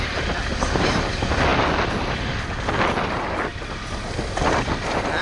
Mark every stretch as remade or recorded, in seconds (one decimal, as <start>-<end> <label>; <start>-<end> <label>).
0.0-5.2 recorded